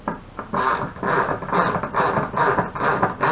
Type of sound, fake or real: real